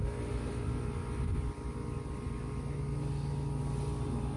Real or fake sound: real